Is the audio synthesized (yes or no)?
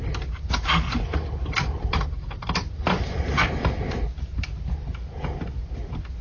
no